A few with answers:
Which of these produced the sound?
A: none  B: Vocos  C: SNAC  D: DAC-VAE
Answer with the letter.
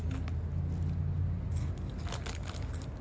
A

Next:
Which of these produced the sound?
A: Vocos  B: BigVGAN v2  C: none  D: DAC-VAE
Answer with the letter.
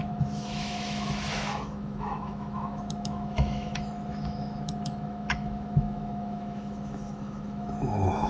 D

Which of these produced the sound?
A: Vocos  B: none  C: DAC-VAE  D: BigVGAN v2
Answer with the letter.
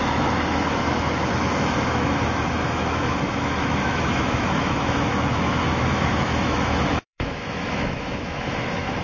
C